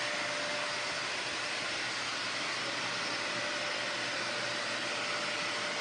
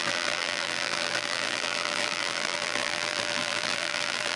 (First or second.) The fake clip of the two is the second